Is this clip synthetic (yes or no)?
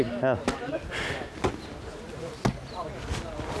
no